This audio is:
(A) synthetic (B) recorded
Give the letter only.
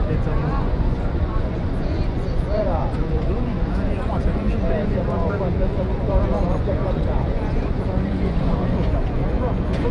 A